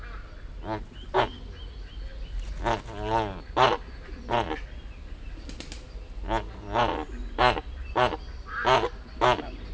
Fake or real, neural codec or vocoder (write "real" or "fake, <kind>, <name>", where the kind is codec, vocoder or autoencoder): real